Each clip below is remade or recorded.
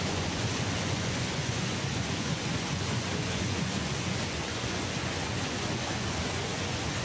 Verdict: remade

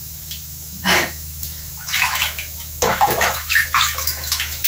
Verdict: remade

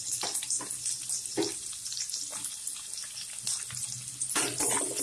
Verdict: recorded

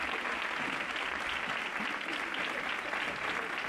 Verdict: recorded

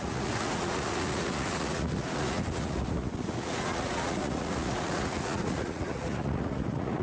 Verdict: remade